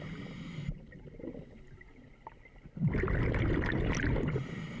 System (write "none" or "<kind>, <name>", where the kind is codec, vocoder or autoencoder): none